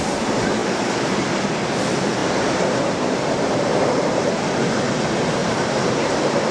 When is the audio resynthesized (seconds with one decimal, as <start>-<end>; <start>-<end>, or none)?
2.2-4.3; 5.4-6.1